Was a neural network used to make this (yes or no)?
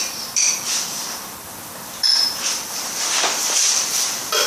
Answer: yes